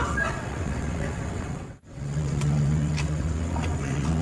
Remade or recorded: remade